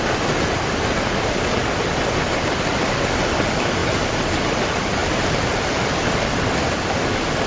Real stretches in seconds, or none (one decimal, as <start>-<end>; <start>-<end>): 0.0-7.5